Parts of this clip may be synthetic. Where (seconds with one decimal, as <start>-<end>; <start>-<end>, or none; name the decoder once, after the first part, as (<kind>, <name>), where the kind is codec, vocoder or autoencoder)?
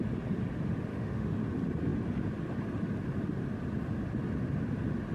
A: 0.9-1.4 (autoencoder, DAC-VAE)